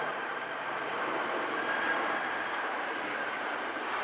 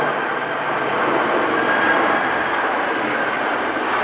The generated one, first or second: first